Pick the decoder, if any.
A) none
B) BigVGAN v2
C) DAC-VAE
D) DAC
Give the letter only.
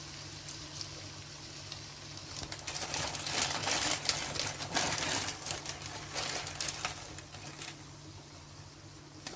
A